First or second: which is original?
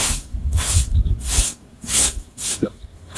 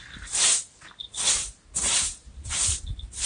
second